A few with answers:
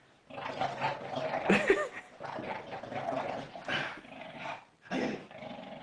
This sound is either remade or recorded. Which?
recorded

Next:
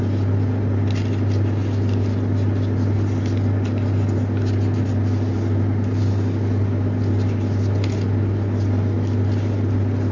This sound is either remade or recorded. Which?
recorded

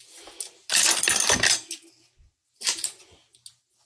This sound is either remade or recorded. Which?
recorded